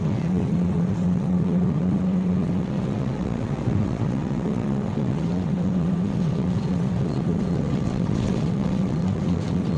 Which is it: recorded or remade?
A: remade